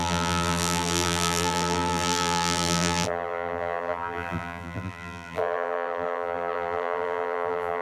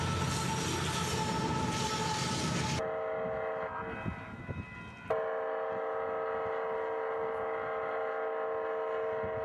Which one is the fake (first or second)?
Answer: first